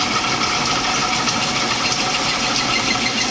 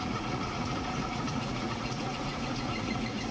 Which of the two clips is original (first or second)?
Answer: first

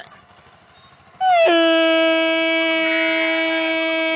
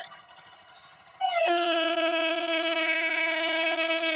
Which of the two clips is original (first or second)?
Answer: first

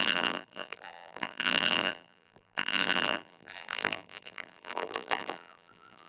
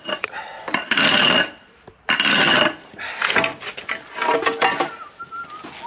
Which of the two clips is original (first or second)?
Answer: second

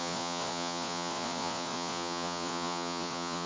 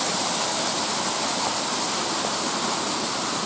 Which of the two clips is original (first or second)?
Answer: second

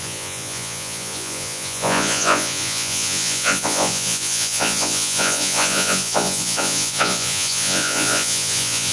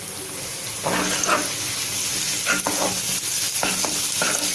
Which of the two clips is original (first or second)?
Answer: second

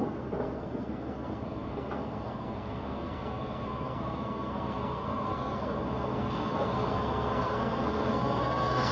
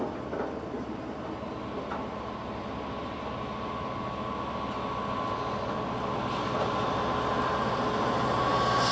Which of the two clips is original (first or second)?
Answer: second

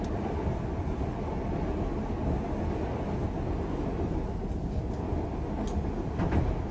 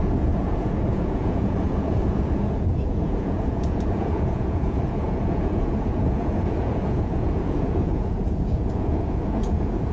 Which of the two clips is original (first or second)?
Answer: first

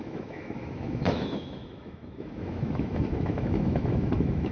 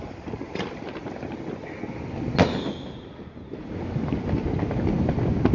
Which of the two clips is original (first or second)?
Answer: second